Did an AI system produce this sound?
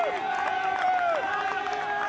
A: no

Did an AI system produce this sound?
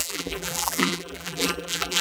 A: yes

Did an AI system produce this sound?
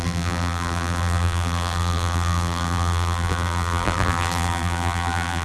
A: yes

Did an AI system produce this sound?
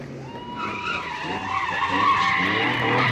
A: no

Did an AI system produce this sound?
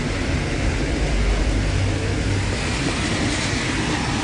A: no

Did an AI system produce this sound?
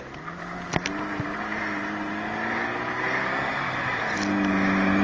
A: no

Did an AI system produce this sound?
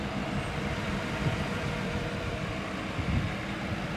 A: yes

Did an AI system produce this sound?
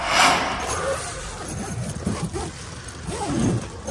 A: no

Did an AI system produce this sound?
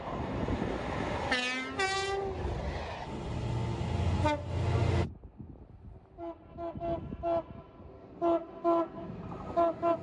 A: no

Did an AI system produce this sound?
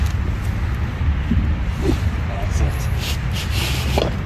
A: no